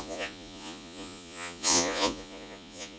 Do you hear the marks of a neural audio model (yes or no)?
yes